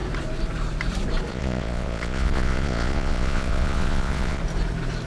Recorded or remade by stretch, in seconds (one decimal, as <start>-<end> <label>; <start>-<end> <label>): 0.0-1.3 recorded; 1.3-4.4 remade; 4.4-5.1 recorded